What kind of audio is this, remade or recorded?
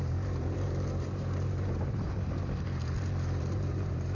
remade